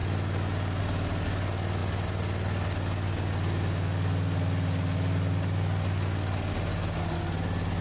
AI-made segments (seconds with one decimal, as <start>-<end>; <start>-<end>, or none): none